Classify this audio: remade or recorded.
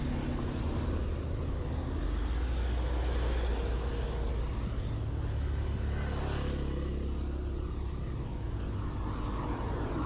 recorded